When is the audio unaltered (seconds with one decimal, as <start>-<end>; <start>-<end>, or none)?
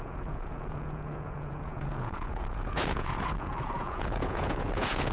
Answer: none